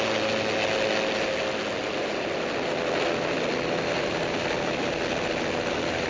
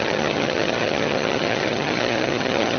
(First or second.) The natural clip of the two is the first